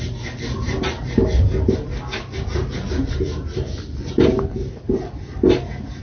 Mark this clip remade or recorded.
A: recorded